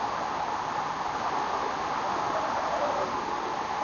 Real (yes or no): yes